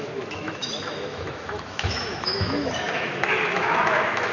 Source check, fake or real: fake